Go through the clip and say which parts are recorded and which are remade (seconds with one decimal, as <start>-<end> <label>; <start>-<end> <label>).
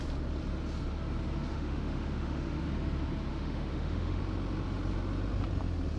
0.0-1.5 recorded; 1.5-2.7 remade; 2.7-3.3 recorded; 3.3-4.2 remade; 4.2-6.0 recorded